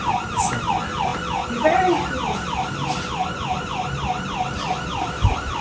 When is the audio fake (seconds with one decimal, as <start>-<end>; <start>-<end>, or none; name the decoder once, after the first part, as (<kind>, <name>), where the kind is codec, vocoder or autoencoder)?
none